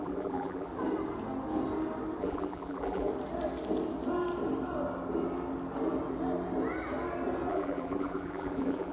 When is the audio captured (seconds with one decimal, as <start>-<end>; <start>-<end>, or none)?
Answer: 0.7-2.2; 3.1-7.5